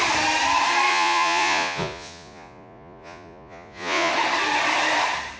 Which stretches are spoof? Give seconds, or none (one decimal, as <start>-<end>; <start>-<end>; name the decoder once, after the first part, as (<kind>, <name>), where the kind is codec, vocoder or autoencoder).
0.9-4.1 (vocoder, Vocos)